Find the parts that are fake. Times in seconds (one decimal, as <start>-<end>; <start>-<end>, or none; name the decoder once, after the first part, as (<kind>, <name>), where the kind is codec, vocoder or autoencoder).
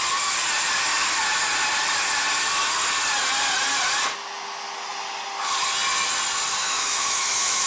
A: 6.6-7.7 (autoencoder, DAC-VAE)